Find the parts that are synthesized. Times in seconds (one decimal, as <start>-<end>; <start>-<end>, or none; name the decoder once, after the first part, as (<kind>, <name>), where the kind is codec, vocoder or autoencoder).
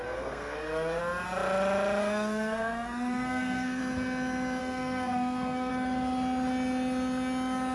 0.0-1.0 (codec, SNAC); 2.0-3.8; 4.6-5.7